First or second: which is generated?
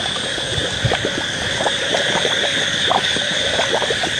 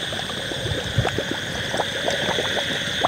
first